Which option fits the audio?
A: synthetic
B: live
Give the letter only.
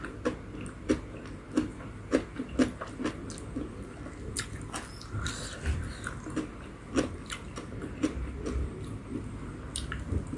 B